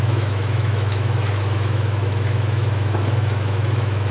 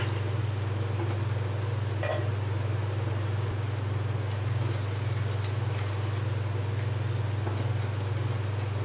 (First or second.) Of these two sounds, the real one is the second